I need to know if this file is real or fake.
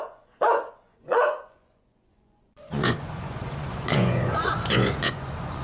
fake